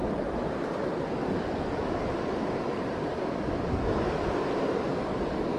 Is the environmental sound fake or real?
real